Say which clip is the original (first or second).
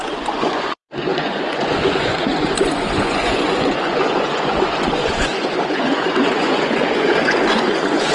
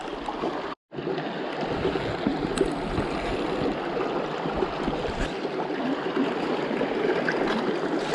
second